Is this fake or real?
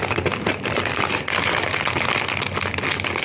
real